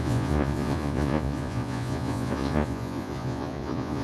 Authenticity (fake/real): fake